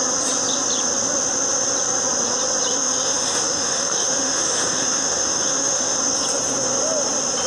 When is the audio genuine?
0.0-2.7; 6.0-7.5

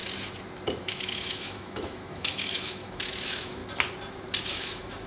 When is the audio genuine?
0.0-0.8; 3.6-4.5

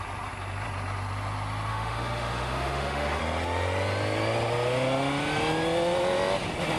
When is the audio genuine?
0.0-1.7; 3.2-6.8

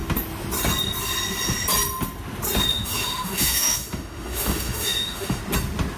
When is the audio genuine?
0.0-2.7; 5.4-6.0

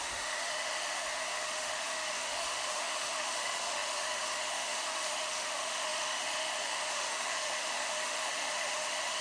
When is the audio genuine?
none

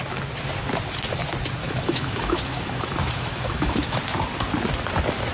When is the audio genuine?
0.0-1.6; 4.0-5.3